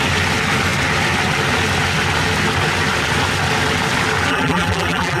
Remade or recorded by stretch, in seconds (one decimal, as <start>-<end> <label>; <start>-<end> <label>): 0.0-4.3 recorded; 4.3-5.2 remade